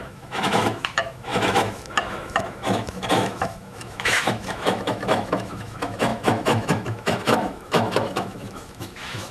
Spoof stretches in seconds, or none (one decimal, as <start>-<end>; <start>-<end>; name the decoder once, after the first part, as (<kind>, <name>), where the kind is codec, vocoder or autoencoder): 0.0-9.3 (autoencoder, DAC-VAE)